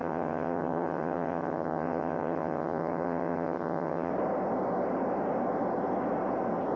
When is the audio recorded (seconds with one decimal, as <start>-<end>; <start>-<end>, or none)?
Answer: 4.1-6.8